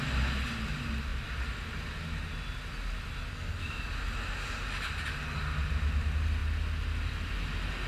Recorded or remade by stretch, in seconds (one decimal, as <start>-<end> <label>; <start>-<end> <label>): 0.0-3.3 recorded; 3.3-3.8 remade; 3.8-7.9 recorded